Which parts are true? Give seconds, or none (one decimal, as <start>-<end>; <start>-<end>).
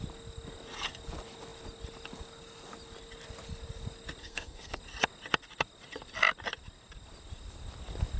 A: 0.0-4.2; 4.8-8.2